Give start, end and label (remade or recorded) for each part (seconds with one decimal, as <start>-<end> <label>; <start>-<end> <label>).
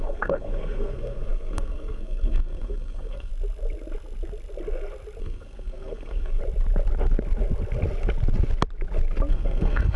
0.0-3.3 remade; 3.3-5.2 recorded; 5.2-6.4 remade; 6.4-9.3 recorded; 9.3-10.0 remade